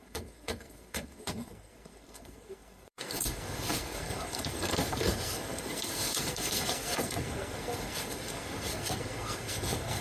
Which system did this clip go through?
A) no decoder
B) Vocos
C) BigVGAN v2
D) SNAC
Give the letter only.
D